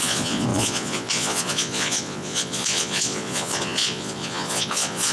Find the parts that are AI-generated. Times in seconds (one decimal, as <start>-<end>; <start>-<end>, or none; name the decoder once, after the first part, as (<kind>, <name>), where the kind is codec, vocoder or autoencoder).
0.0-5.1 (vocoder, Vocos)